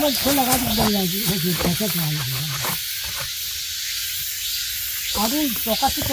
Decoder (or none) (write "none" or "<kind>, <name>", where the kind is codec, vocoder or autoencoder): none